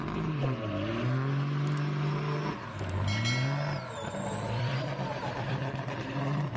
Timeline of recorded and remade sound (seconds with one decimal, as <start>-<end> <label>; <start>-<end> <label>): 0.0-0.4 remade; 0.4-3.9 recorded; 3.9-6.6 remade